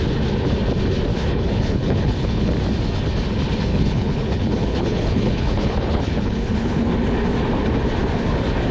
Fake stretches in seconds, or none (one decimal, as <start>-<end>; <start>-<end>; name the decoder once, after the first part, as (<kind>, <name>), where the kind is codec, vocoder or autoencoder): 1.1-2.5 (codec, HILCodec); 3.7-6.9